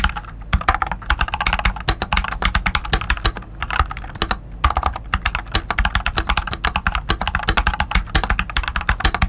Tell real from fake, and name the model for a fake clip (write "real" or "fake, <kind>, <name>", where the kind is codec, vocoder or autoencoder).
real